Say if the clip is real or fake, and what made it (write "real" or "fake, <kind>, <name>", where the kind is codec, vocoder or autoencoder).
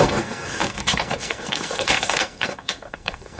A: fake, codec, SNAC